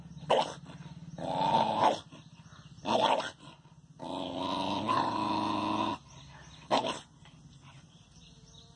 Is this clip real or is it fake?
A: real